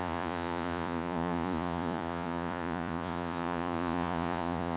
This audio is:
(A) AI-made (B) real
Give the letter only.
A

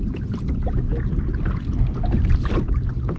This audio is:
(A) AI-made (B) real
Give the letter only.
B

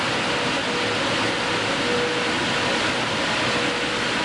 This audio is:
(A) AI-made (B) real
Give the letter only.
B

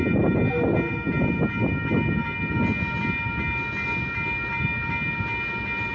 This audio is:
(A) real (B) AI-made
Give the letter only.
A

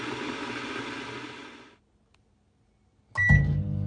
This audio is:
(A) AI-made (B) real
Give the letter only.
B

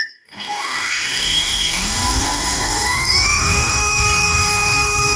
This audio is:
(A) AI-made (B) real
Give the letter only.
A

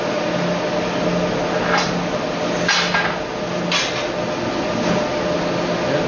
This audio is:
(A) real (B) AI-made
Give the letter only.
A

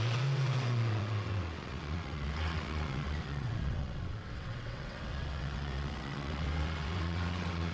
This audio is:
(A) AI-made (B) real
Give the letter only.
A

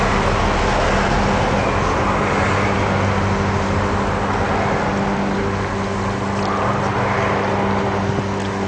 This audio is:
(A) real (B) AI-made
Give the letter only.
A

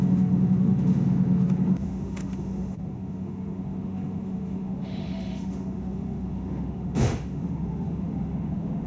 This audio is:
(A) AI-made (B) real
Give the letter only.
A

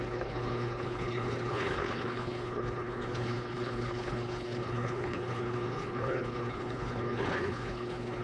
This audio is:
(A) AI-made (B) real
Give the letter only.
A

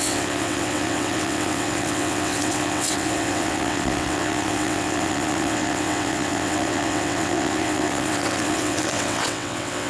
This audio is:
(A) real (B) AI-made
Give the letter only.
B